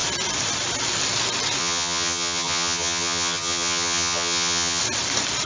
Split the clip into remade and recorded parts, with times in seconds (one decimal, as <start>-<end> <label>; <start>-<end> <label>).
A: 0.0-1.6 recorded; 1.6-4.8 remade; 4.8-5.4 recorded